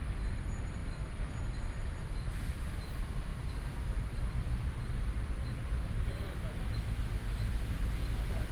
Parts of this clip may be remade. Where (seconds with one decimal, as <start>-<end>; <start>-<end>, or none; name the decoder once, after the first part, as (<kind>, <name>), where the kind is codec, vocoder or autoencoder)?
0.0-8.5 (vocoder, BigVGAN v2)